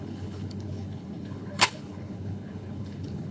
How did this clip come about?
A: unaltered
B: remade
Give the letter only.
B